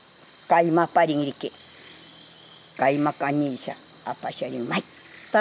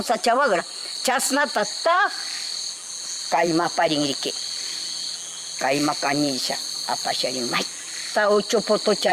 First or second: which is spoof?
second